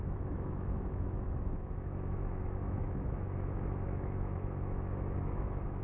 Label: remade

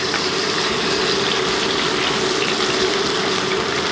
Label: recorded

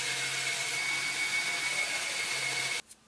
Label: recorded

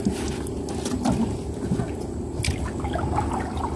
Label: recorded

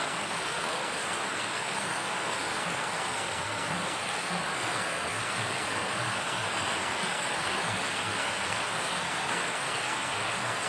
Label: remade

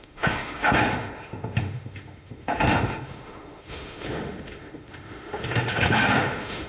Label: remade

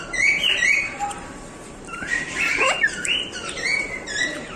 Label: remade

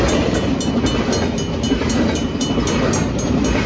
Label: recorded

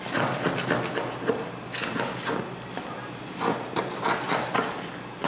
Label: recorded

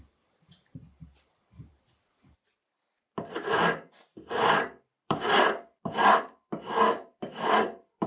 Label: remade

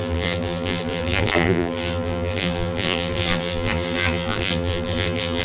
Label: remade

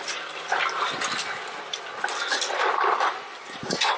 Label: recorded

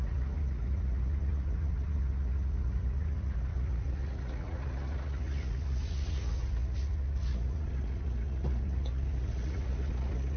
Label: remade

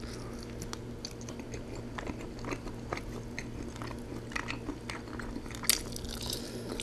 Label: recorded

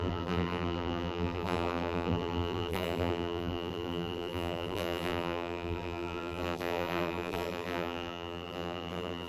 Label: remade